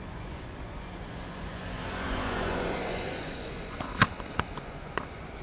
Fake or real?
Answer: fake